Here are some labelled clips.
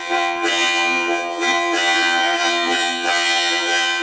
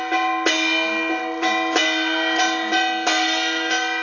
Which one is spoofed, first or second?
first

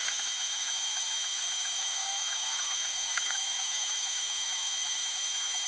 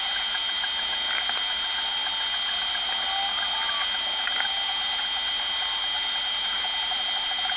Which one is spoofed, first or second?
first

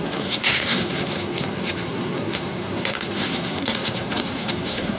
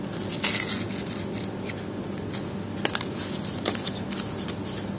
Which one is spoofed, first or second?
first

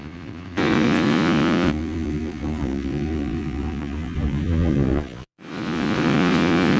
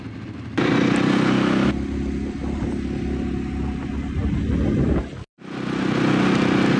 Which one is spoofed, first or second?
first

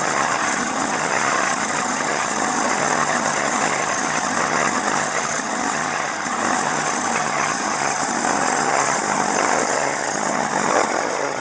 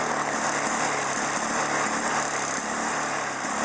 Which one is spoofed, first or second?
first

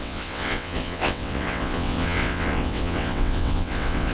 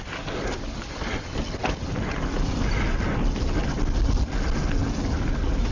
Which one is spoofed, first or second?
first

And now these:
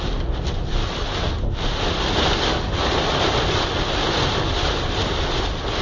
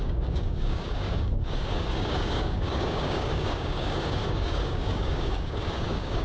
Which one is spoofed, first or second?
second